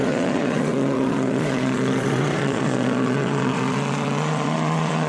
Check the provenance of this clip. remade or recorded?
remade